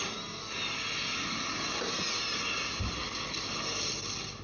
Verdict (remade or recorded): recorded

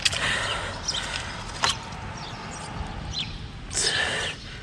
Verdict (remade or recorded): recorded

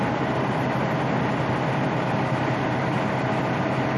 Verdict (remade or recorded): recorded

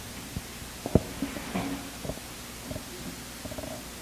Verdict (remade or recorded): recorded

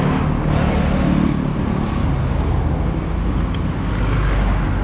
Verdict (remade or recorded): recorded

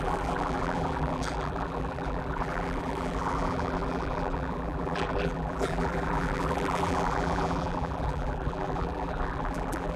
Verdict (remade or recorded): remade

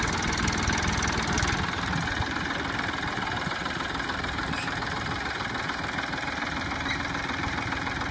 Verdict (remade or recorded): remade